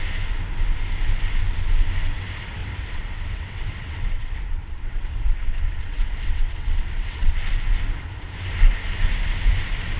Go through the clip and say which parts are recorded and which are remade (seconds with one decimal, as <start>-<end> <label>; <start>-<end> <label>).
0.0-2.6 recorded; 2.6-7.4 remade; 7.4-10.0 recorded